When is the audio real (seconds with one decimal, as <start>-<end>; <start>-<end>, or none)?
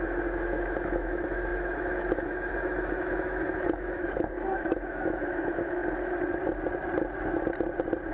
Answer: 5.8-8.1